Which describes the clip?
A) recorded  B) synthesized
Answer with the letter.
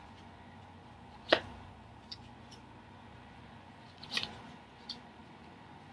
B